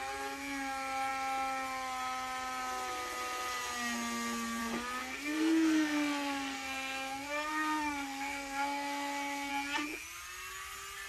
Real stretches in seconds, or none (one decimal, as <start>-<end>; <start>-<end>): 0.0-5.0; 9.5-11.1